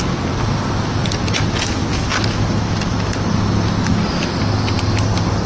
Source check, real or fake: real